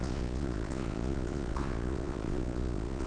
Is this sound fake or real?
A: fake